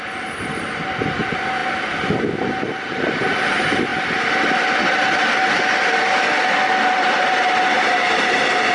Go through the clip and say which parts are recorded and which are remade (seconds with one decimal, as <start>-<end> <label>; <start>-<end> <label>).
0.0-8.7 recorded